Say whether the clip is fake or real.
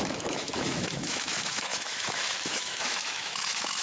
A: fake